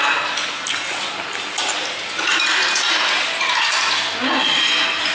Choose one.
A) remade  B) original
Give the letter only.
B